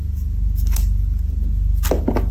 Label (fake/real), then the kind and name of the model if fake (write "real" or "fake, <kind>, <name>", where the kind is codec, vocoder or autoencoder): real